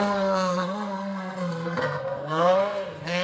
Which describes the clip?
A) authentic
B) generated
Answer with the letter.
B